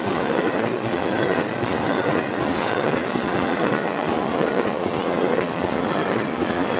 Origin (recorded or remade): remade